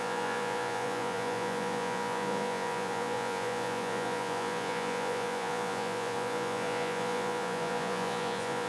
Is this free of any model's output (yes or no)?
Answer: no